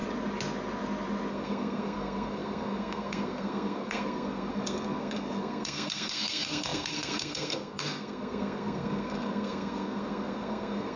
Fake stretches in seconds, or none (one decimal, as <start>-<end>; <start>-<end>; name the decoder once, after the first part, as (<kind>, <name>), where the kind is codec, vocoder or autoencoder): 1.3-11.0 (codec, SNAC)